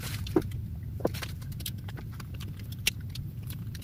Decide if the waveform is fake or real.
fake